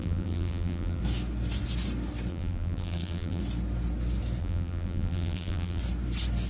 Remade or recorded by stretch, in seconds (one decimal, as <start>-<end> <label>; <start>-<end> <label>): 0.0-1.0 remade; 1.0-2.3 recorded; 2.3-3.4 remade; 3.4-4.4 recorded; 4.4-5.8 remade; 5.8-6.5 recorded